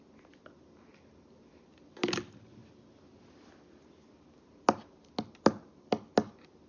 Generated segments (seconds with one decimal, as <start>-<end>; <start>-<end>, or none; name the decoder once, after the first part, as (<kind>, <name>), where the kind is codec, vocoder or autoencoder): none